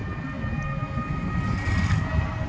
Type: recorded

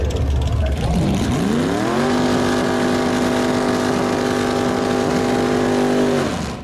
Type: recorded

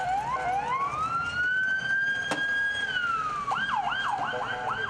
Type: recorded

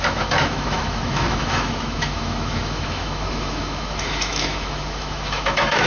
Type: remade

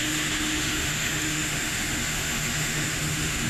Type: remade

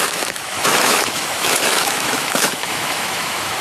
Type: remade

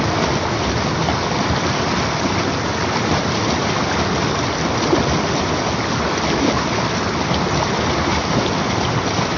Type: recorded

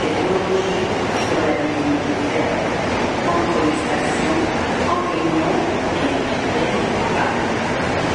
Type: recorded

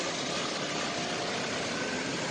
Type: recorded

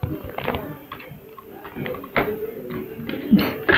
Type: recorded